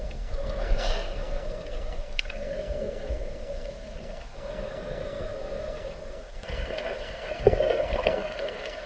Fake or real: fake